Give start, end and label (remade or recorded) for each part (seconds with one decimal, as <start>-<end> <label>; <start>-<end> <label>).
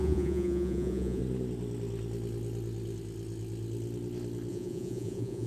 0.0-1.2 remade; 1.2-4.5 recorded; 4.5-5.5 remade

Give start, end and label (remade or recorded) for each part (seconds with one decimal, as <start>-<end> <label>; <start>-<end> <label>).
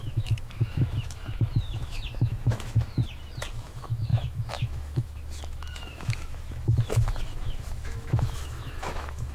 0.0-3.0 remade; 3.0-3.5 recorded; 3.5-9.3 remade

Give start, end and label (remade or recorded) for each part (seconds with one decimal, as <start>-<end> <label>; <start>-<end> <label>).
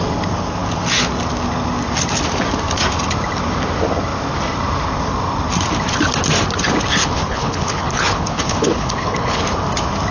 0.0-7.0 recorded; 7.0-9.4 remade; 9.4-10.1 recorded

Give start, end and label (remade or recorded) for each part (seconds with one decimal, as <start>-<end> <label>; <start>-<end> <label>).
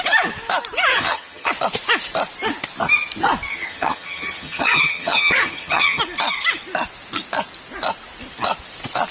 0.0-0.9 recorded; 0.9-1.5 remade; 1.5-3.5 recorded; 3.5-6.0 remade; 6.0-9.1 recorded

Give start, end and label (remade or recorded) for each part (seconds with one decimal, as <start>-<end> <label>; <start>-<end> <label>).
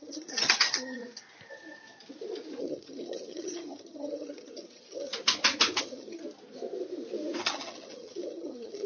0.0-1.0 remade; 1.0-2.6 recorded; 2.6-5.1 remade; 5.1-5.8 recorded; 5.8-6.2 remade; 6.2-7.4 recorded; 7.4-8.9 remade